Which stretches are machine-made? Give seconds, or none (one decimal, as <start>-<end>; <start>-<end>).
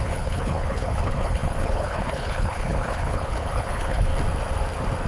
0.0-4.1